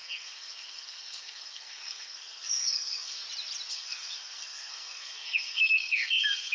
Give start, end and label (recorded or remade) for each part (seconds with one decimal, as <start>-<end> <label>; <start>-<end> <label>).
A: 0.0-3.2 remade; 3.2-3.7 recorded; 3.7-6.5 remade